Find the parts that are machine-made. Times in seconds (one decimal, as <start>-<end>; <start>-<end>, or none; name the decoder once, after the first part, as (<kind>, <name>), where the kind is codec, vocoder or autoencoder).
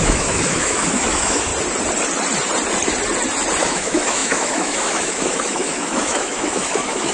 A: 0.0-1.5 (autoencoder, DAC-VAE); 3.6-7.1